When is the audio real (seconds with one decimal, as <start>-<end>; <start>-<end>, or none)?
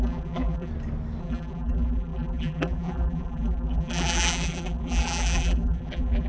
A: 0.7-1.2